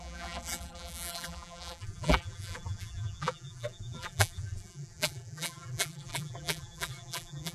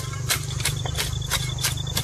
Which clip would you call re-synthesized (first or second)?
first